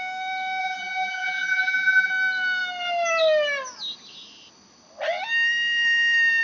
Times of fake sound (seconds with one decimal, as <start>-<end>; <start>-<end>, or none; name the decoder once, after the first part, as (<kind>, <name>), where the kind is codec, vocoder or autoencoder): 0.6-2.1 (vocoder, BigVGAN v2)